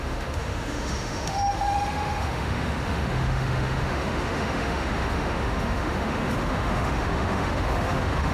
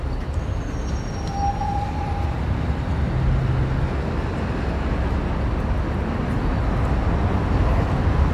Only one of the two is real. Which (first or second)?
second